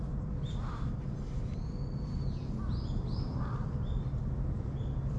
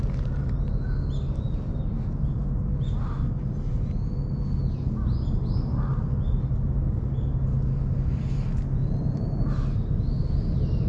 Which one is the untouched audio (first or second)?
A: second